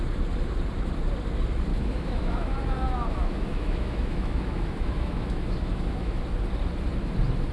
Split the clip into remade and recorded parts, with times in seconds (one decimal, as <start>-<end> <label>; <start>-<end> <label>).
0.0-1.7 recorded; 1.7-6.2 remade; 6.2-7.5 recorded